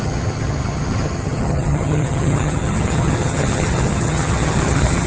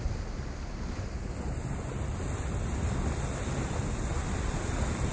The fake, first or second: first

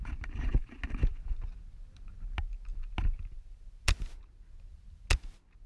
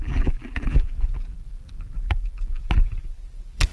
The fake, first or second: second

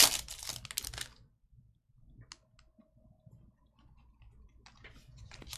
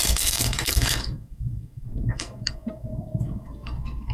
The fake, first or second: second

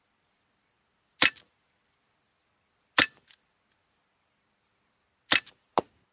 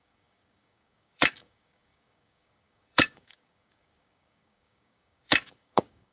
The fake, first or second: second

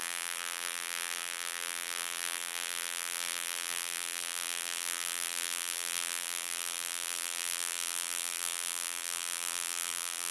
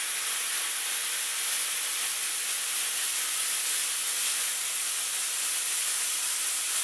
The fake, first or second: first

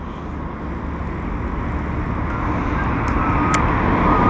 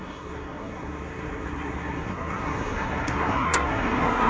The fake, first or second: second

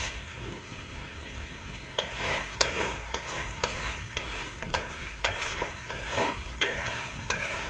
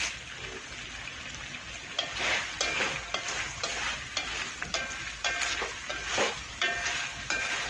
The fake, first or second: first